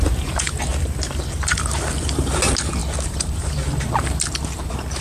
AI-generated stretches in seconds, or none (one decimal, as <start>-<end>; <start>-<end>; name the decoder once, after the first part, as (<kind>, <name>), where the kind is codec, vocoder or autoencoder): 0.7-2.4 (vocoder, BigVGAN v2); 2.8-4.6